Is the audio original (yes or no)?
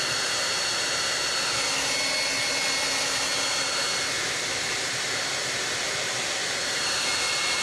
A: yes